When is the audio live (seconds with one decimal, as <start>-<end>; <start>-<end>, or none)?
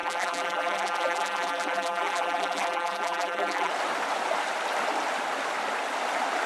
3.7-6.5